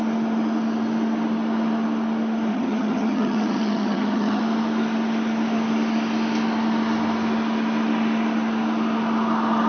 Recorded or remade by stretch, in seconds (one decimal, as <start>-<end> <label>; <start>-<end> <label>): 0.0-2.5 recorded; 2.5-4.4 remade; 4.4-9.7 recorded